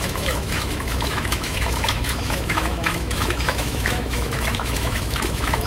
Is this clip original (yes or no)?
no